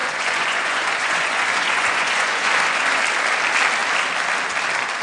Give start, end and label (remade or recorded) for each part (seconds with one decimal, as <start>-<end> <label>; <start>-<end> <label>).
0.0-3.0 remade; 3.0-5.0 recorded